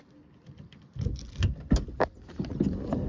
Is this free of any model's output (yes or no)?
yes